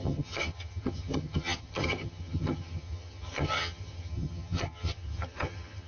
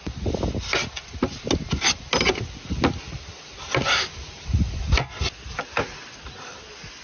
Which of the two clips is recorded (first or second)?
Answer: second